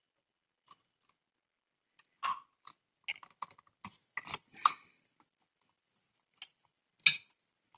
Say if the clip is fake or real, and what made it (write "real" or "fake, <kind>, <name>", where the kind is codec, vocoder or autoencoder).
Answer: real